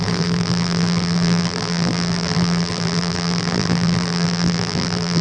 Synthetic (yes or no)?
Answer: yes